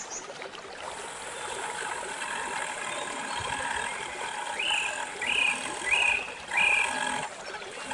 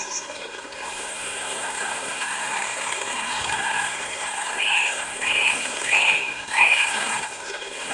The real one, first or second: first